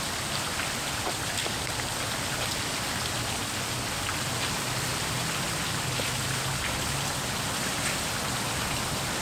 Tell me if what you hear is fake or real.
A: real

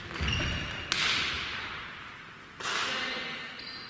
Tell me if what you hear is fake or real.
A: real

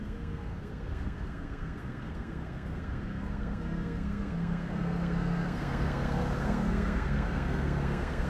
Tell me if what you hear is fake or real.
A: fake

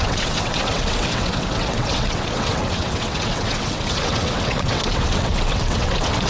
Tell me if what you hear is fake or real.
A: fake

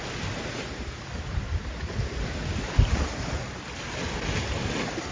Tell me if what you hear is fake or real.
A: real